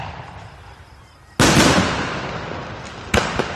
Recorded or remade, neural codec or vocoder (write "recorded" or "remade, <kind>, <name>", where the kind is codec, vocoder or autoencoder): recorded